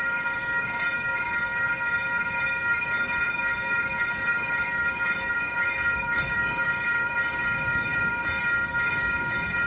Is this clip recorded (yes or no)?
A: no